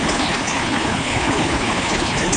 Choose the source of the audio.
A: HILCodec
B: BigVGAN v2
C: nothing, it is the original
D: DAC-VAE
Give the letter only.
A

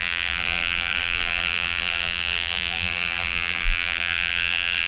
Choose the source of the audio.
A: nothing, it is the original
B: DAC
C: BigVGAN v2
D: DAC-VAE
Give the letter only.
C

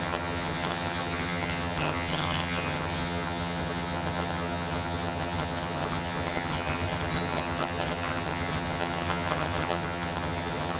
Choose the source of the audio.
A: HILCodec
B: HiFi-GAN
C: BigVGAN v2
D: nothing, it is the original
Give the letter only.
B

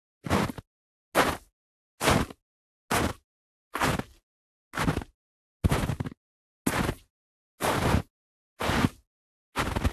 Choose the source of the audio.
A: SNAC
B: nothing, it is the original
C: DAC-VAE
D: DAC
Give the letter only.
B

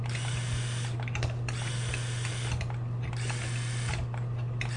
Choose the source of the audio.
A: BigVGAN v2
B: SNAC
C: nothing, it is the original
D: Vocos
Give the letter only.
C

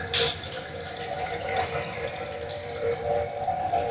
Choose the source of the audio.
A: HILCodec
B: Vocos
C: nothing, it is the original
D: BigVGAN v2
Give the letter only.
D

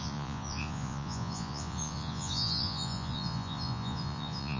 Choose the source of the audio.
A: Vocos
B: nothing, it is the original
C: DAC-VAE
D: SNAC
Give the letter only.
A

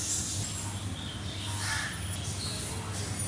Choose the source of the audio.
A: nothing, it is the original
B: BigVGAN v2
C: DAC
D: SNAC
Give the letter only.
A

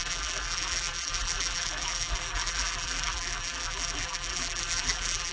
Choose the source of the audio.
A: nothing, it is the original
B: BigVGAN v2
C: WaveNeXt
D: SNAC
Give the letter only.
B